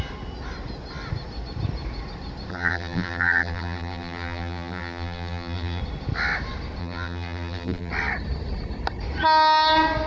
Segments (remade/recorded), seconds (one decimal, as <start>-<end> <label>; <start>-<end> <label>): 0.0-2.5 recorded; 2.5-5.8 remade; 5.8-6.8 recorded; 6.8-7.9 remade; 7.9-10.1 recorded